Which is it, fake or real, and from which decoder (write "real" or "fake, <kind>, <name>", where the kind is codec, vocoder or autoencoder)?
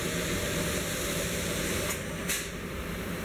fake, vocoder, BigVGAN v2